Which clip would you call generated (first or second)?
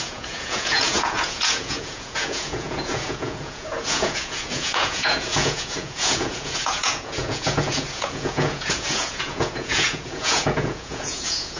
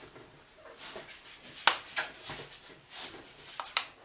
first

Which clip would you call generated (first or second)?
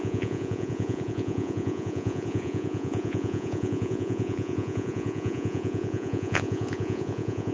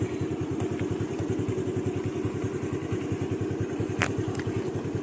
first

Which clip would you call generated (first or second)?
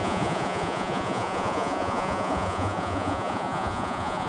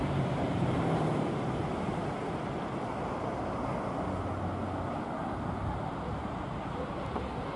first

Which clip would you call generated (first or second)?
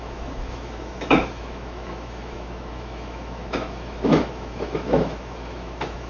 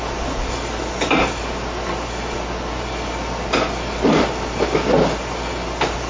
first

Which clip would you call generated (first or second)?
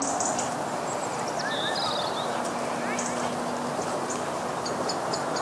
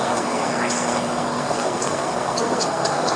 second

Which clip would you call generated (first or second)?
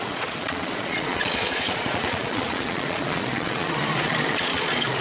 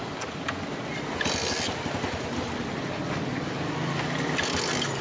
first